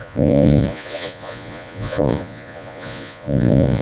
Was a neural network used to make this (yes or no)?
yes